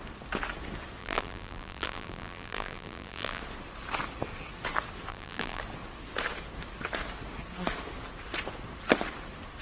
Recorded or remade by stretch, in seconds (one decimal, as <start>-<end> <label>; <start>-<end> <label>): 0.0-1.0 recorded; 1.0-3.4 remade; 3.4-5.1 recorded; 5.1-5.6 remade; 5.6-9.6 recorded